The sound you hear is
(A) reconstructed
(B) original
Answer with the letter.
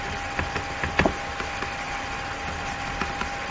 B